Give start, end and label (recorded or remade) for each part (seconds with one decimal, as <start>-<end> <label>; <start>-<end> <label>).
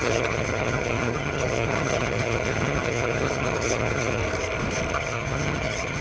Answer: 0.0-4.2 remade; 4.2-4.9 recorded; 4.9-6.0 remade